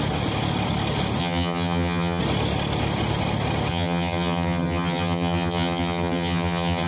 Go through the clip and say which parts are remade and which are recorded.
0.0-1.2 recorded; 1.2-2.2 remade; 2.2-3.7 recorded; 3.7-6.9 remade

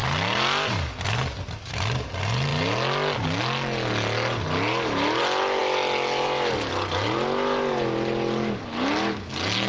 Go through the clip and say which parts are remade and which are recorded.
0.0-9.7 recorded

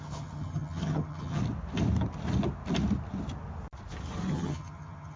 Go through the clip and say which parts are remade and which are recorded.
0.0-1.4 remade; 1.4-4.3 recorded; 4.3-5.2 remade

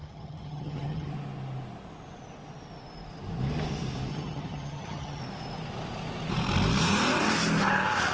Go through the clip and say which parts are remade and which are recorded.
0.0-1.1 remade; 1.1-4.1 recorded; 4.1-5.2 remade; 5.2-8.1 recorded

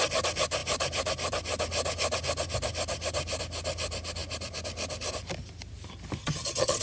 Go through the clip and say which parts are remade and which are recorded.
0.0-6.2 recorded; 6.2-6.8 remade

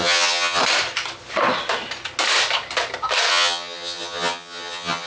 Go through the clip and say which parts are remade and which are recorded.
0.0-0.6 remade; 0.6-3.3 recorded; 3.3-5.1 remade